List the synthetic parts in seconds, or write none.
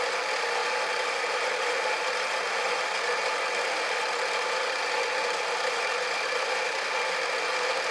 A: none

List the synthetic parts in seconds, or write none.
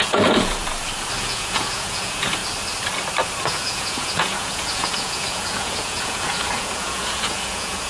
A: 0.0-0.6 (vocoder, Vocos); 1.2-2.4; 3.4-7.9